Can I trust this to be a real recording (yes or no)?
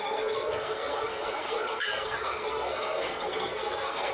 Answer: no